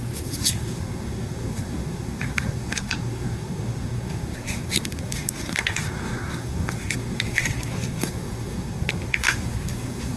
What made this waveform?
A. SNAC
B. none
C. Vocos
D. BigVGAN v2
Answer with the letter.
A